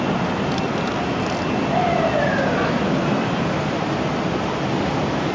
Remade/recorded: recorded